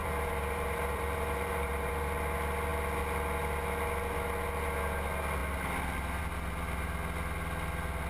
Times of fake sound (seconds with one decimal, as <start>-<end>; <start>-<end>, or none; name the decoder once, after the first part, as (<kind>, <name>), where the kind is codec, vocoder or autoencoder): 0.0-1.9 (vocoder, BigVGAN v2)